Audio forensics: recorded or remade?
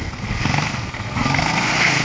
remade